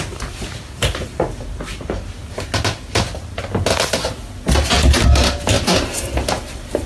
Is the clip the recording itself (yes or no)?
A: yes